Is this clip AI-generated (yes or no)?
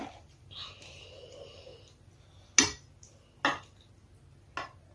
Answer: no